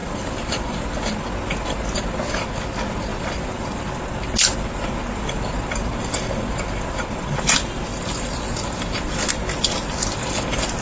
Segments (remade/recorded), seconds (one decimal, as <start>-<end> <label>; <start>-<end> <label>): 0.0-0.8 remade; 0.8-3.1 recorded; 3.1-3.9 remade; 3.9-7.9 recorded; 7.9-9.3 remade; 9.3-10.8 recorded